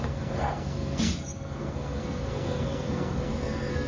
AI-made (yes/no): yes